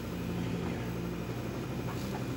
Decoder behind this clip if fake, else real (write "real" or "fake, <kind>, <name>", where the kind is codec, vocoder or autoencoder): real